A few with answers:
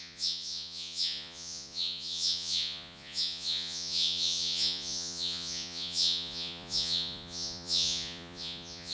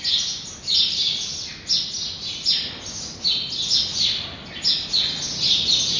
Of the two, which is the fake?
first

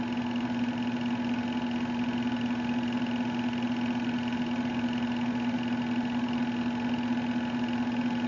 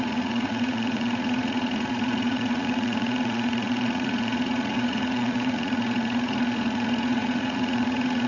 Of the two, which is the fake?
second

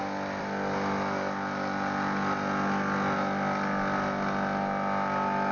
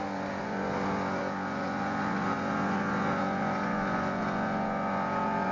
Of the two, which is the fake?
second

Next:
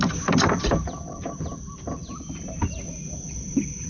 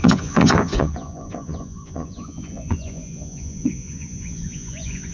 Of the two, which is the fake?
second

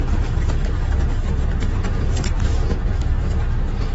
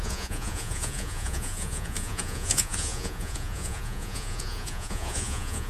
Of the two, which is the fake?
second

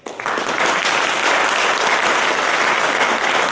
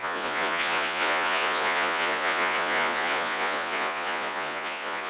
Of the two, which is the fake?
second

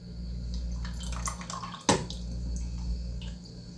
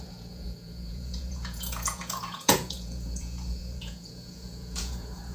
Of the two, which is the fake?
second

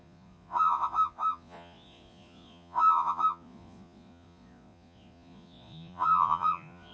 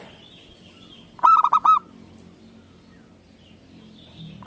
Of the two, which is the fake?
first